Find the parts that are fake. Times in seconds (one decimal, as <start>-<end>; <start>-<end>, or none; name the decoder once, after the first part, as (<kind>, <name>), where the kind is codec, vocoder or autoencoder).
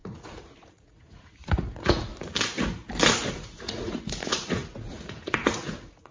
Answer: 0.0-2.1 (vocoder, Vocos); 3.3-6.1